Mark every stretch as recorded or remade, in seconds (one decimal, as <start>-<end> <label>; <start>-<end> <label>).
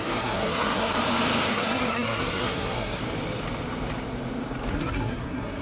0.0-0.9 remade; 0.9-1.5 recorded; 1.5-3.0 remade; 3.0-4.7 recorded; 4.7-5.6 remade